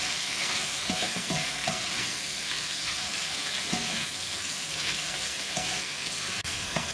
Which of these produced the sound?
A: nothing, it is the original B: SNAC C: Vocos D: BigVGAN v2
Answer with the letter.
B